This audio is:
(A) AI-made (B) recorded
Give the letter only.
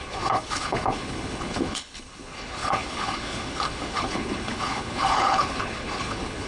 A